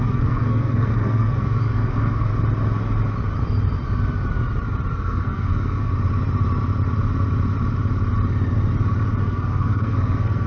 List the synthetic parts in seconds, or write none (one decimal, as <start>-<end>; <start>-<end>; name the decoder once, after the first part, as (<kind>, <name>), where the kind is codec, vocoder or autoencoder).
0.0-2.3 (codec, SNAC); 4.9-5.9; 9.2-10.5